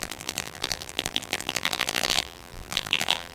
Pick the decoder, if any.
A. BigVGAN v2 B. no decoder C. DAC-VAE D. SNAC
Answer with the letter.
A